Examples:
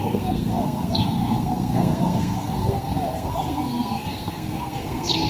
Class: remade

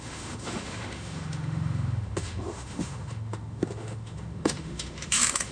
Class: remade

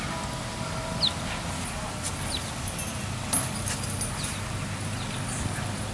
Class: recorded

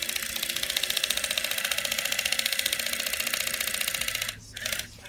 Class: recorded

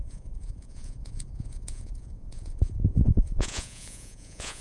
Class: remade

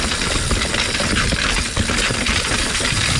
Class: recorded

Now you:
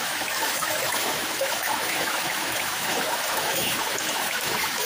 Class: remade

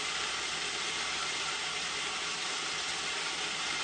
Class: recorded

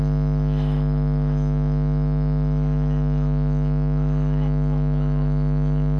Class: remade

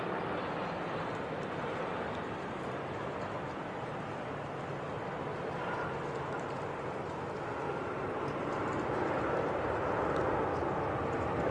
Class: recorded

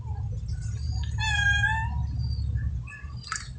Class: recorded